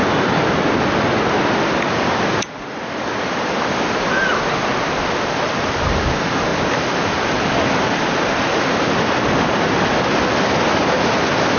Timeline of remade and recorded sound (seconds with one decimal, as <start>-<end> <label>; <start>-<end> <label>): 0.0-11.6 recorded